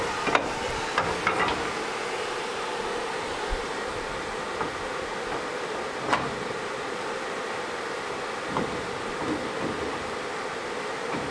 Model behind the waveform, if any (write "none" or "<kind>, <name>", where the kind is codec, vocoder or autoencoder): none